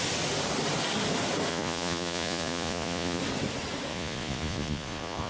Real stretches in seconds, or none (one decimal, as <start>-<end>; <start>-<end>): 0.0-1.5; 3.2-3.9